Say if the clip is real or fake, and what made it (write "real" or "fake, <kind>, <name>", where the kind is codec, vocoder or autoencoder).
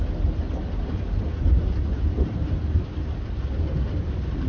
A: real